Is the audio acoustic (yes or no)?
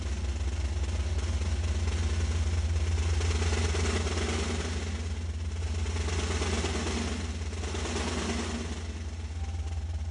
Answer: yes